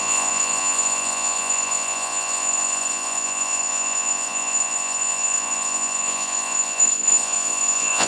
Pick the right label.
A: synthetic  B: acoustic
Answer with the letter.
A